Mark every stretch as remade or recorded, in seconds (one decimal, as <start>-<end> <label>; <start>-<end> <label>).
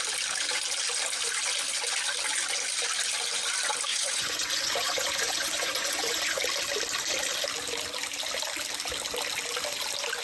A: 0.0-3.9 recorded; 3.9-6.4 remade; 6.4-10.2 recorded